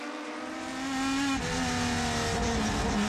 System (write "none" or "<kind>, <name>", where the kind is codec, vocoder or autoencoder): none